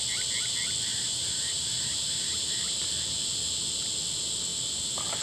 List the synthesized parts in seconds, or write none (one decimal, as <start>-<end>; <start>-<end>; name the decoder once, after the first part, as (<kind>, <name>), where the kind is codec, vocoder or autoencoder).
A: 0.9-2.9 (vocoder, BigVGAN v2)